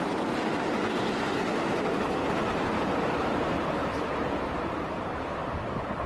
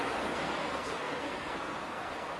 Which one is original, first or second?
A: first